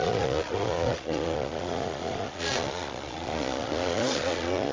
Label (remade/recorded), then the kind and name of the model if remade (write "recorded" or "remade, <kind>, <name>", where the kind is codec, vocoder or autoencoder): remade, vocoder, Vocos